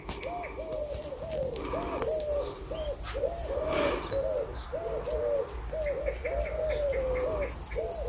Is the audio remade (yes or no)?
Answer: no